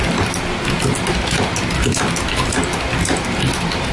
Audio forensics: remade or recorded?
recorded